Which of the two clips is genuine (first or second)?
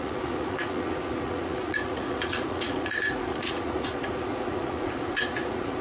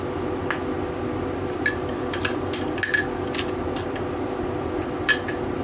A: second